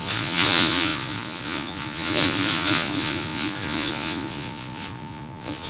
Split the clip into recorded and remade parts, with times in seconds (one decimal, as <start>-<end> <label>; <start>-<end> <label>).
0.0-5.7 remade